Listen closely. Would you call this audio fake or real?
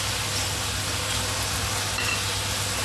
real